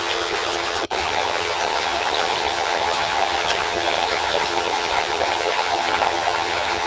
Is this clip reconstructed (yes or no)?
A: yes